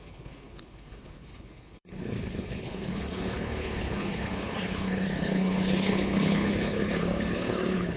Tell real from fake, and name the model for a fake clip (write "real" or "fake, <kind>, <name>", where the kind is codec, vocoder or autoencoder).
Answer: fake, codec, HILCodec